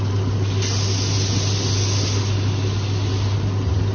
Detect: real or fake real